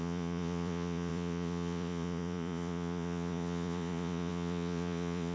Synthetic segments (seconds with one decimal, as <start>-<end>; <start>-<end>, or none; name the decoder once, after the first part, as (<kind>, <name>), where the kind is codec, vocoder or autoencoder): 0.0-5.3 (vocoder, Vocos)